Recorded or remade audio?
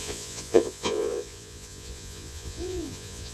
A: remade